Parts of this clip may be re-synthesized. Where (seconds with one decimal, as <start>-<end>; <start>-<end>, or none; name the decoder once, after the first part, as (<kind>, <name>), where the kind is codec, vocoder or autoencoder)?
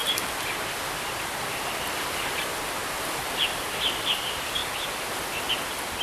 none